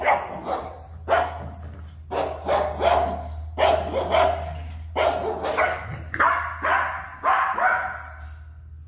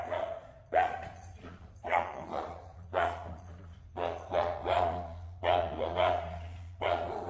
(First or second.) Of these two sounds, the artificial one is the second